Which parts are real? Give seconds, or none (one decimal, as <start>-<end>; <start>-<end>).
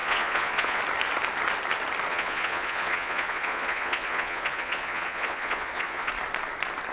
0.8-2.1; 6.1-6.9